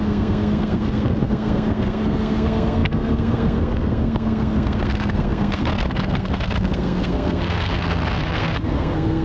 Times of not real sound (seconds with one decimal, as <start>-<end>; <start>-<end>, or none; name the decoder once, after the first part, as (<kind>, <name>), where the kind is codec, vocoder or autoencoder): 0.0-9.2 (codec, SNAC)